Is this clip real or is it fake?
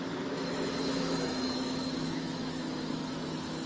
fake